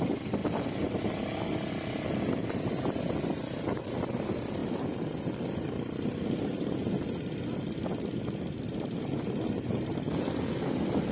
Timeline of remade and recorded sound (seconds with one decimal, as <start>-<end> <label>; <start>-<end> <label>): 0.0-11.1 recorded